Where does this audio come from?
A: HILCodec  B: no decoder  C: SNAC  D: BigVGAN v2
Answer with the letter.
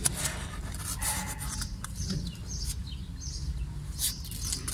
B